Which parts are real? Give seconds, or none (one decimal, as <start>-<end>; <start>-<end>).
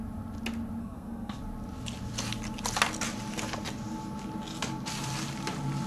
0.0-0.8; 1.4-5.9